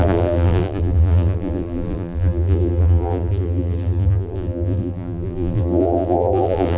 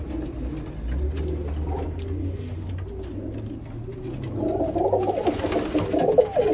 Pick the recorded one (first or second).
second